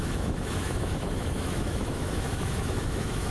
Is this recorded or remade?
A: remade